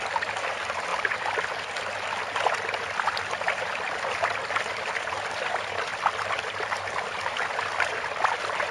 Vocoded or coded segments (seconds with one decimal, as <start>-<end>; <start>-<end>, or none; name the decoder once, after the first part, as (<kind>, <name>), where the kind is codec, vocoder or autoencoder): none